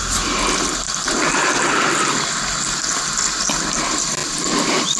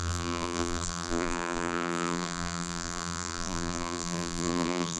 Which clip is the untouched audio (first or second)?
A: first